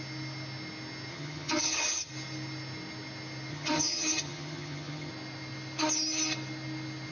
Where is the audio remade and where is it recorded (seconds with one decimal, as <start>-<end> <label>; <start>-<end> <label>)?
0.0-1.1 recorded; 1.1-2.1 remade; 2.1-3.5 recorded; 3.5-5.1 remade; 5.1-7.1 recorded